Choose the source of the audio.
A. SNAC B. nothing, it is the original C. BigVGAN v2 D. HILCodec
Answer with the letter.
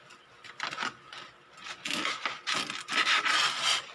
B